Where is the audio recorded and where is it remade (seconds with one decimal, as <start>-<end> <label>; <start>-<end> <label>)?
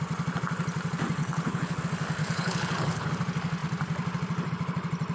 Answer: 0.0-1.2 recorded; 1.2-1.8 remade; 1.8-2.2 recorded; 2.2-3.1 remade; 3.1-5.1 recorded